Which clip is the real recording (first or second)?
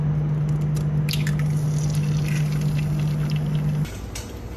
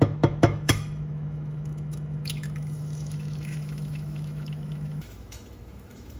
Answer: first